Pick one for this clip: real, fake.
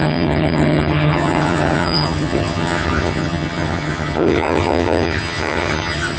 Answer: fake